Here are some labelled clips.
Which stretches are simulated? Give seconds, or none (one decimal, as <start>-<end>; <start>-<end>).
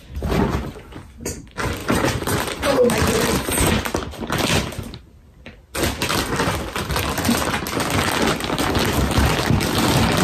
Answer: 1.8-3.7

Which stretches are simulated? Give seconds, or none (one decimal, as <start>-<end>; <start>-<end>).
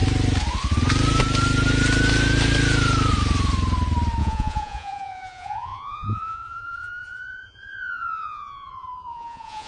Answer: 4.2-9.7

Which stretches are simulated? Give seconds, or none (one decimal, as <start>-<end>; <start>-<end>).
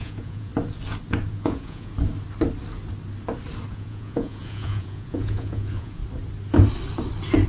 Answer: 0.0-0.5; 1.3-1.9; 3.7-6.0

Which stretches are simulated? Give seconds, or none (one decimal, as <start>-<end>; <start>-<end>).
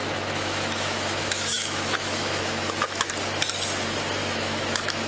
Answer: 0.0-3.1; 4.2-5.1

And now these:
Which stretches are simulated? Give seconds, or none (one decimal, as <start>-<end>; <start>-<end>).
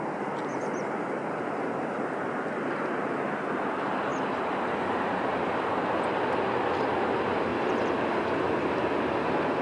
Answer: none